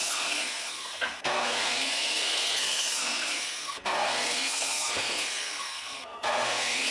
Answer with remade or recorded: remade